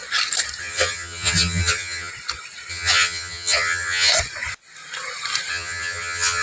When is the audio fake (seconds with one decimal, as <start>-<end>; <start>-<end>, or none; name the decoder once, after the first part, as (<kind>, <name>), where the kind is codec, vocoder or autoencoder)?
0.6-2.1 (vocoder, HiFi-GAN); 2.7-4.1; 5.5-6.4